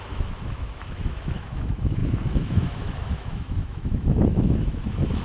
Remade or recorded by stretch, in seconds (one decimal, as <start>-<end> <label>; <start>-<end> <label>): 0.0-5.2 remade